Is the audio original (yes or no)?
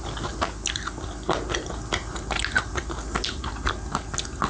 yes